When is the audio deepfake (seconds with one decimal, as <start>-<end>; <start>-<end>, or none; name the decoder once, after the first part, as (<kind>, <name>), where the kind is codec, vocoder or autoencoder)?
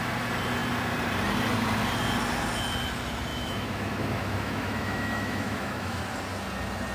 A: 3.3-6.0 (autoencoder, DAC-VAE)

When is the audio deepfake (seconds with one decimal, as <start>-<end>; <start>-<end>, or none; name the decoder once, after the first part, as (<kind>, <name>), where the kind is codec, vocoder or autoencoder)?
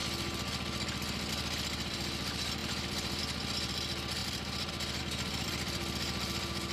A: 1.3-6.7 (vocoder, BigVGAN v2)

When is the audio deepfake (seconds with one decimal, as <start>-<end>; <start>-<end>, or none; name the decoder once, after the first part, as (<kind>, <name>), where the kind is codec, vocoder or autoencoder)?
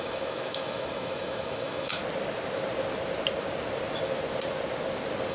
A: 0.0-2.0 (autoencoder, DAC-VAE)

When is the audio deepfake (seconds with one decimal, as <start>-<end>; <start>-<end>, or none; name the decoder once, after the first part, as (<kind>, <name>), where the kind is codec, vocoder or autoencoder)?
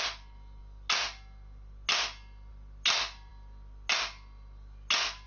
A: none